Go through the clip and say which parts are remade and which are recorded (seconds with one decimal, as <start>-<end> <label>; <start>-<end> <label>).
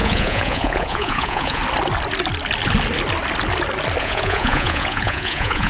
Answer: 0.0-1.6 remade; 1.6-4.0 recorded; 4.0-5.7 remade